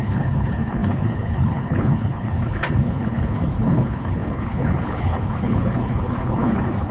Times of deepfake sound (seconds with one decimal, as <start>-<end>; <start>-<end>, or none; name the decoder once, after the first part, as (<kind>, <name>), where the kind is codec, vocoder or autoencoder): 0.0-6.9 (codec, HILCodec)